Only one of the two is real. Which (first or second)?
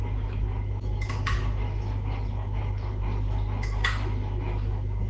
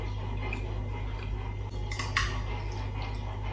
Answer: second